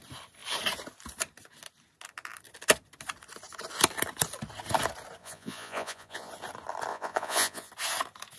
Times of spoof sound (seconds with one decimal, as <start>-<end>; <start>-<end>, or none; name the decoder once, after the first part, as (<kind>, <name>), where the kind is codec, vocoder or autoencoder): 5.2-6.3 (vocoder, Vocos); 6.9-7.7